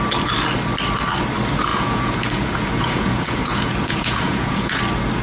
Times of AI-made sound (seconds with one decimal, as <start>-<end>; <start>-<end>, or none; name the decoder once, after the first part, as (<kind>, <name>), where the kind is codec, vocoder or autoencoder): 1.7-4.8 (vocoder, Vocos)